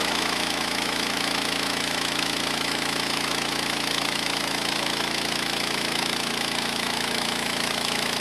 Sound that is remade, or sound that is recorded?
remade